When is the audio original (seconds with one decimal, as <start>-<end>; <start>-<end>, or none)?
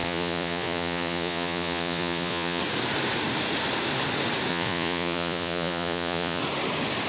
2.6-4.5; 6.4-7.1